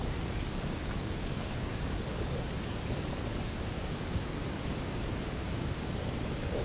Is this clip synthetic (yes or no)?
yes